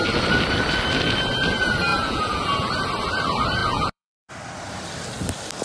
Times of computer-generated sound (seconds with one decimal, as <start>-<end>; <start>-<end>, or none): 1.9-2.7; 3.6-4.3